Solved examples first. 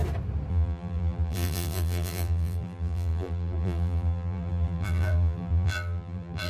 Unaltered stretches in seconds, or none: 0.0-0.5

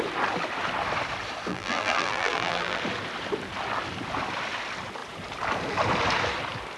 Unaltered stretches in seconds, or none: 0.0-1.5; 2.8-6.8

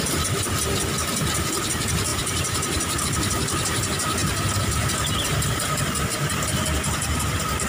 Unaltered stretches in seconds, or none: 0.0-2.1; 3.0-7.7

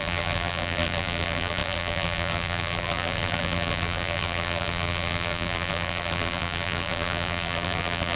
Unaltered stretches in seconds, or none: none

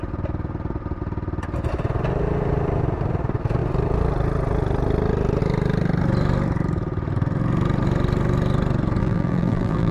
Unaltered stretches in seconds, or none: 0.0-9.0